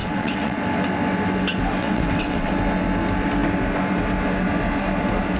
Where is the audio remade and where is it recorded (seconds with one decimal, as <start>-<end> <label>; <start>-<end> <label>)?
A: 0.0-0.6 remade; 0.6-1.8 recorded; 1.8-2.5 remade; 2.5-5.4 recorded